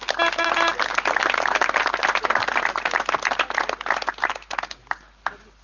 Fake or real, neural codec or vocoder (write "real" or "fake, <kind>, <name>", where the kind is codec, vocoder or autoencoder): real